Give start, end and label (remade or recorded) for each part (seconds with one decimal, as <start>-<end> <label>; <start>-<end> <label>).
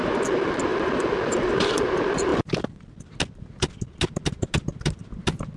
0.0-5.6 recorded